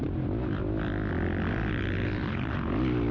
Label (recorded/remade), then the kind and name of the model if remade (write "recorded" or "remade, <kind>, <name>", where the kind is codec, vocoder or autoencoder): recorded